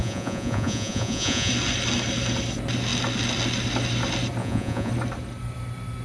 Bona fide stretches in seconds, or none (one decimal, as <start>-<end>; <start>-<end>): 1.5-4.4; 4.9-6.0